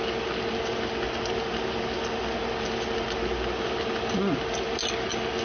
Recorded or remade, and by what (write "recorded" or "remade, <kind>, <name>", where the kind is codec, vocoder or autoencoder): recorded